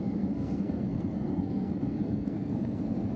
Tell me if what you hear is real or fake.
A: fake